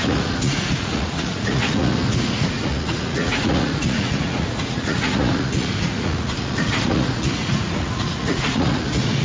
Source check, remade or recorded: remade